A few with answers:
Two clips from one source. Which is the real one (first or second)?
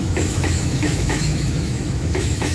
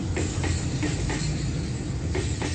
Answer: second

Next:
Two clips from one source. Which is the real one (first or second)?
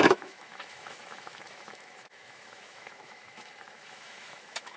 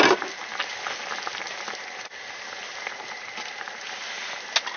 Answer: second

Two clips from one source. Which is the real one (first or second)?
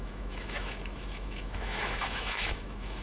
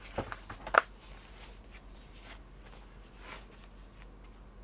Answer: second